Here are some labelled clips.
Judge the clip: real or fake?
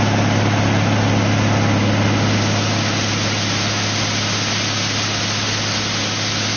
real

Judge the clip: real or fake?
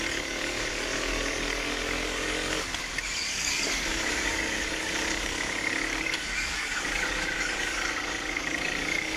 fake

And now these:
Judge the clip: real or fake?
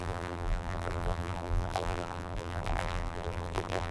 fake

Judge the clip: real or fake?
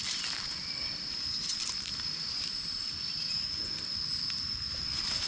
real